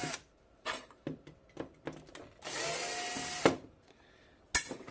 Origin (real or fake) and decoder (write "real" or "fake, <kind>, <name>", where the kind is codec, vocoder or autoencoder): real